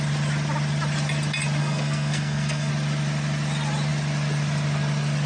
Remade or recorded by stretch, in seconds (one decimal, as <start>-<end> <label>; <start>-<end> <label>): 0.0-1.6 recorded; 1.6-2.7 remade; 2.7-5.3 recorded

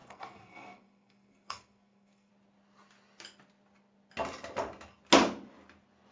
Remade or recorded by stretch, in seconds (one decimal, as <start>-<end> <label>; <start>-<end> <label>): 0.0-2.3 remade; 2.3-6.1 recorded

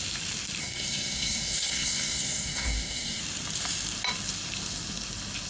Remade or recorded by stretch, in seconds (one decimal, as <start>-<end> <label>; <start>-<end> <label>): 0.0-0.6 recorded; 0.6-3.2 remade; 3.2-5.5 recorded

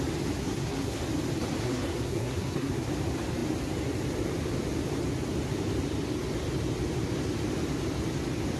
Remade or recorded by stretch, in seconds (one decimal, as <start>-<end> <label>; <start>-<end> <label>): 0.0-0.4 recorded; 0.4-1.0 remade; 1.0-1.6 recorded; 1.6-2.9 remade; 2.9-8.6 recorded

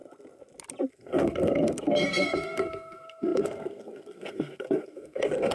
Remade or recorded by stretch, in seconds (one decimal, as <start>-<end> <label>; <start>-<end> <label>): 0.0-0.9 recorded; 0.9-5.5 remade

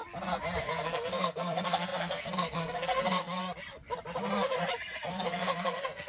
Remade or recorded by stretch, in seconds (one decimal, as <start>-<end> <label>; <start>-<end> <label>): 0.0-0.6 recorded; 0.6-3.4 remade; 3.4-5.1 recorded; 5.1-6.1 remade

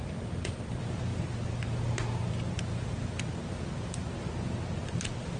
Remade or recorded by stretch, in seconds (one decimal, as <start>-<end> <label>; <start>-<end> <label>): 0.0-5.4 recorded

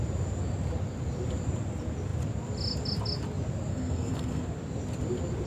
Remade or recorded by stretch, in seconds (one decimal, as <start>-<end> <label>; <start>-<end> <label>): 0.0-3.7 recorded; 3.7-4.4 remade; 4.4-5.5 recorded